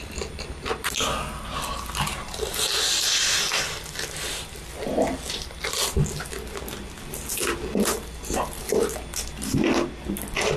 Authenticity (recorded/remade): recorded